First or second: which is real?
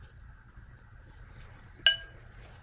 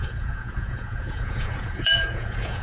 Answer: first